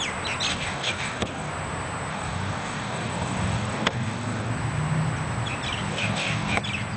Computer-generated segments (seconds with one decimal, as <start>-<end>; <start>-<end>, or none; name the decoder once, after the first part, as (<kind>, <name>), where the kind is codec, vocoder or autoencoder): 0.5-1.5 (codec, DAC); 2.1-4.5; 5.9-6.6

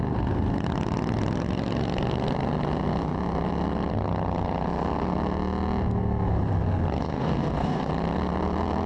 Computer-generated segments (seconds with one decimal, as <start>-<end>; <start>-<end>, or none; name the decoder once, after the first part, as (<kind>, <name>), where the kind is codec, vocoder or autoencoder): 7.0-7.9 (codec, DAC)

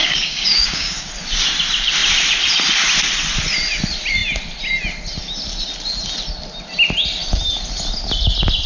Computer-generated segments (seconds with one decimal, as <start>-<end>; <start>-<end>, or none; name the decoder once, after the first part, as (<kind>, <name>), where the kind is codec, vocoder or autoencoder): 0.0-1.1 (codec, DAC)

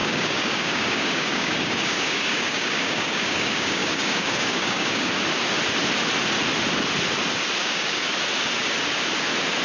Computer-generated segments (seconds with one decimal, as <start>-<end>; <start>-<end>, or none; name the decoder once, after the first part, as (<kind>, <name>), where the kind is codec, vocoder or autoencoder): 0.0-5.1 (codec, DAC); 7.6-8.1

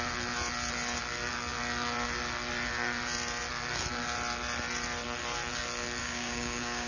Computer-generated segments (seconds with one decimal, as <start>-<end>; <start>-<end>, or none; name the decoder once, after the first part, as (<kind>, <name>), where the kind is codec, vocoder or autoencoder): 6.0-6.9 (codec, DAC)

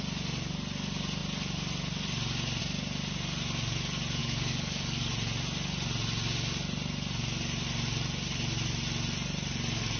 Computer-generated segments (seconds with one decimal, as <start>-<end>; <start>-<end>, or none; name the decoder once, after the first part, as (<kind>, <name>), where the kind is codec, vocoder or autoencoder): 4.2-5.1 (codec, DAC)

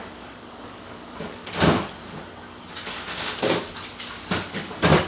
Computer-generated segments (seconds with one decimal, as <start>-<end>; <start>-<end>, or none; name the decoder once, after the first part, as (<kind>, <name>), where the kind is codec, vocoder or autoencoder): 0.0-1.4 (codec, DAC); 4.5-5.1